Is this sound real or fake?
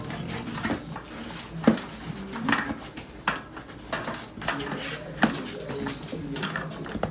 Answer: real